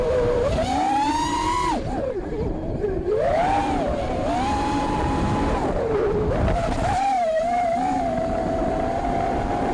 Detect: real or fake fake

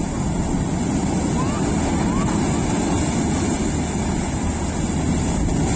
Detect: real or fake real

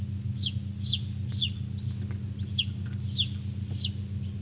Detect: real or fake real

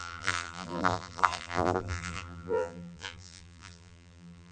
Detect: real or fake fake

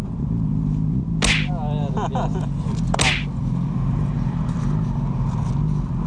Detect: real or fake real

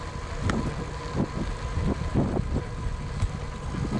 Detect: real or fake real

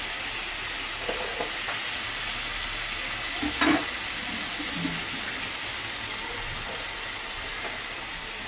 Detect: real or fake real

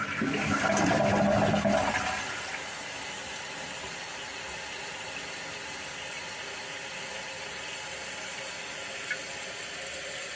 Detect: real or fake real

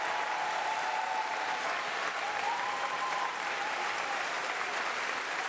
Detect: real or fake fake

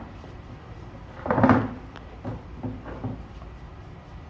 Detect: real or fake fake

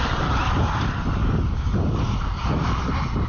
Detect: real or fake real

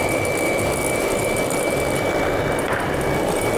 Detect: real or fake fake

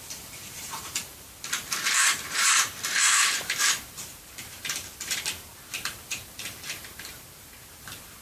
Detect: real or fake fake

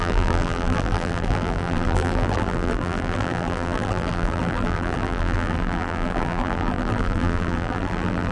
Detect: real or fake fake